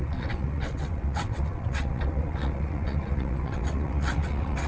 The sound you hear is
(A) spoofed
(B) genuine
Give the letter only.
A